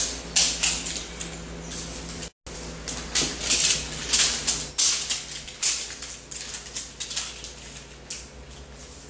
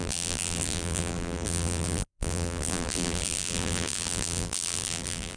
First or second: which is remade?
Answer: second